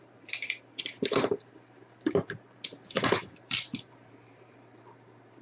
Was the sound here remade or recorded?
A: remade